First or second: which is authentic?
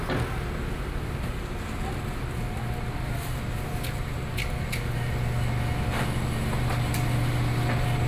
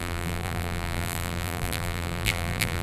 first